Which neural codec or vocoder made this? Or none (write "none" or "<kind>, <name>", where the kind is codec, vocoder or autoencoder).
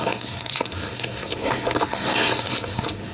codec, SNAC